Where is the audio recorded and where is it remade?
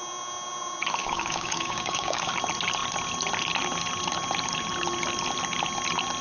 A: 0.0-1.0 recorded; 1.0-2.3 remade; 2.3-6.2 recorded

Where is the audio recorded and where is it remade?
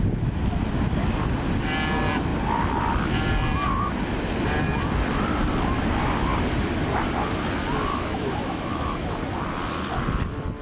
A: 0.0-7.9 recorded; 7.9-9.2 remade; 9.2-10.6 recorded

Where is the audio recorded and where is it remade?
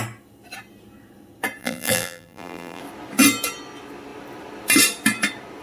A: 0.0-1.6 recorded; 1.6-2.8 remade; 2.8-5.6 recorded